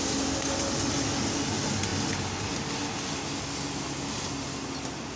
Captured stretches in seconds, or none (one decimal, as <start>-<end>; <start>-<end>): 0.0-5.2